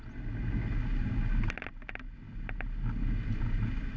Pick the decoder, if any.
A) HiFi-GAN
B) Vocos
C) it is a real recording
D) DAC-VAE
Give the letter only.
C